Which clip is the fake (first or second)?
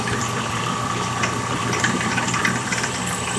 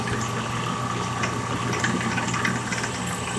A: first